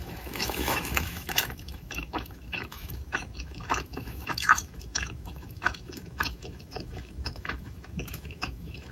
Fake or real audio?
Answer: fake